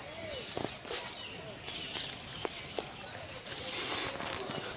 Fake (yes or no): no